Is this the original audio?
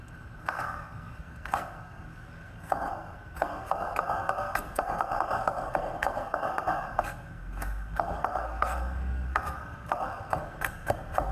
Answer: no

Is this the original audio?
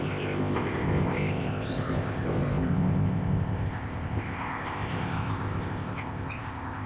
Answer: no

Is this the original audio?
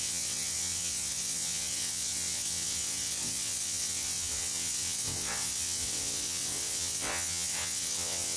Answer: no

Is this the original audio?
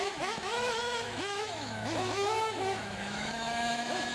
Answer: no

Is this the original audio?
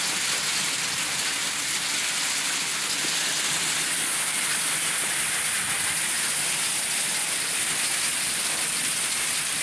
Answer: yes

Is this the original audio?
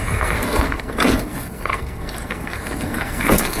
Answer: no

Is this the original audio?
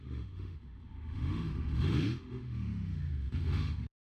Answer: no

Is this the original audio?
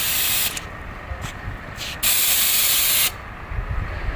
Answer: yes